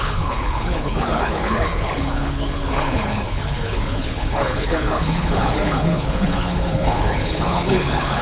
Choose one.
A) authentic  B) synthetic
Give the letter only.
B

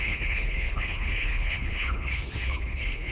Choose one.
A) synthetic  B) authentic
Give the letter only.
A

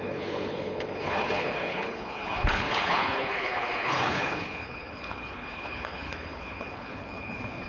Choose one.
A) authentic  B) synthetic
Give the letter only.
B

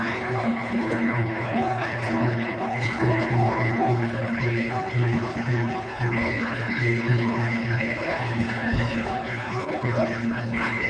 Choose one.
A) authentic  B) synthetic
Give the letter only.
B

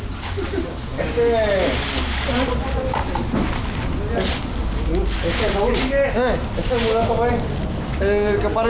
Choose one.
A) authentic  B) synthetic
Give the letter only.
A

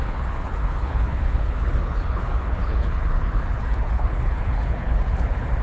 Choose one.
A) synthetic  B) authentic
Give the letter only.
A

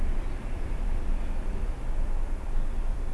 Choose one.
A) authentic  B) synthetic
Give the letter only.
A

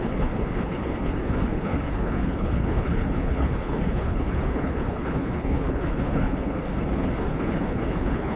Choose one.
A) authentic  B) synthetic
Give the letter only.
B